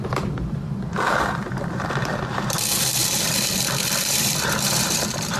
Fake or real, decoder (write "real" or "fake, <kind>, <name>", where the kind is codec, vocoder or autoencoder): fake, vocoder, BigVGAN v2